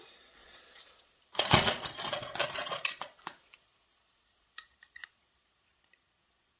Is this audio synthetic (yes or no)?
yes